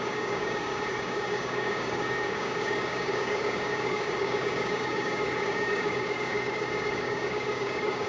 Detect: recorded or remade remade